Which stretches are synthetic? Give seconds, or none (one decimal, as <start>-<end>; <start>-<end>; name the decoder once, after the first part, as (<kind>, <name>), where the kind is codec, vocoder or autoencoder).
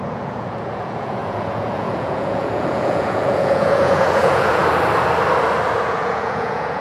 0.0-4.6 (vocoder, Vocos); 5.8-6.8